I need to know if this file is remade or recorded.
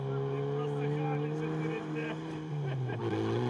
recorded